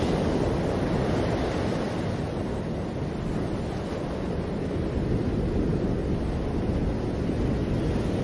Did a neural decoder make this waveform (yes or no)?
no